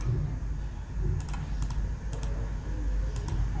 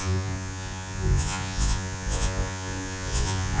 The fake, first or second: second